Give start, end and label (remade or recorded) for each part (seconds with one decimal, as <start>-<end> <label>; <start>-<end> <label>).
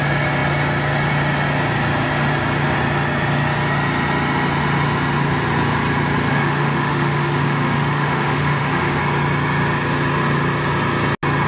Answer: 0.0-6.3 recorded; 6.3-9.0 remade; 9.0-11.5 recorded